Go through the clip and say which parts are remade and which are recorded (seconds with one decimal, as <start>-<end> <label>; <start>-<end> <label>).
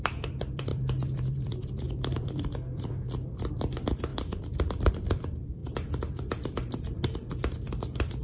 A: 0.0-5.6 remade; 5.6-7.4 recorded; 7.4-8.2 remade